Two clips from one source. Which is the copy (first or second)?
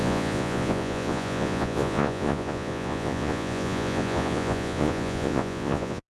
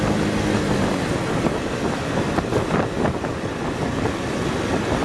first